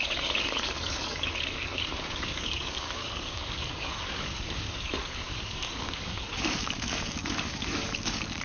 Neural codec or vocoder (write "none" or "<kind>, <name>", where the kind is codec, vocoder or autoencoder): codec, DAC